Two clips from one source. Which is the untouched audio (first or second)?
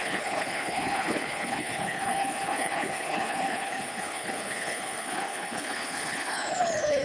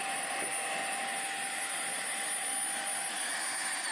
second